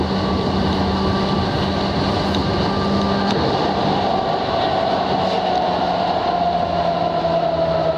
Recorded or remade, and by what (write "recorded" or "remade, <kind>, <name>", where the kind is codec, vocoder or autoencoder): recorded